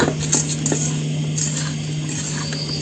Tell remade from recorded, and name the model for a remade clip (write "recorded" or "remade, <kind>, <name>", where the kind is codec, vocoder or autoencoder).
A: recorded